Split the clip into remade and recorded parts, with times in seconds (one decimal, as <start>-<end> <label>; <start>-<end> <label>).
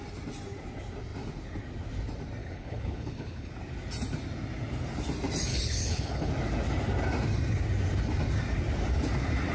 0.0-2.4 recorded; 2.4-3.5 remade; 3.5-5.5 recorded; 5.5-6.3 remade; 6.3-9.5 recorded